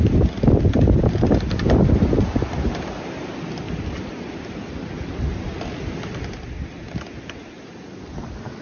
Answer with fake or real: real